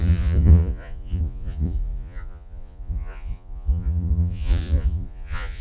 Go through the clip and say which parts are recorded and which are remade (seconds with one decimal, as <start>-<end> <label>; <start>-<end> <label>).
0.0-5.6 remade